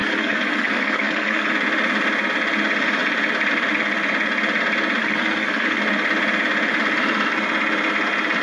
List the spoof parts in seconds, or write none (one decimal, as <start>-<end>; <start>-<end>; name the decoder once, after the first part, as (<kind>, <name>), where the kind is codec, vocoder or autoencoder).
0.0-1.5 (codec, SNAC); 5.0-5.8